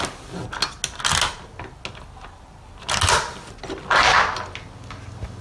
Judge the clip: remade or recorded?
recorded